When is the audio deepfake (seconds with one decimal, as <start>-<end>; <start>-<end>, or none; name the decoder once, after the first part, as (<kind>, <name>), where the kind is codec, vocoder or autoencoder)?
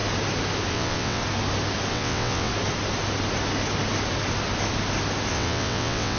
0.7-1.2 (vocoder, WaveNeXt); 1.9-2.5; 5.3-6.2